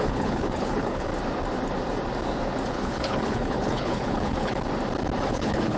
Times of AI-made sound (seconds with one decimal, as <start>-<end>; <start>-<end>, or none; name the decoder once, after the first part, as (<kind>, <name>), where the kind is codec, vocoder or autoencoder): 0.0-1.1 (codec, HILCodec); 2.7-4.6; 5.3-5.8